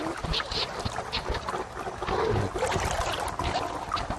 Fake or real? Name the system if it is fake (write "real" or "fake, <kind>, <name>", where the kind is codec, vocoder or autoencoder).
real